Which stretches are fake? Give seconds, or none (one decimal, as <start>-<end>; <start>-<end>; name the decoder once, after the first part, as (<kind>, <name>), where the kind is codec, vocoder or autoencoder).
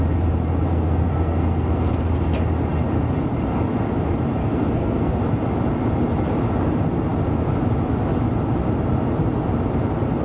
0.7-2.0 (codec, SNAC); 4.4-5.2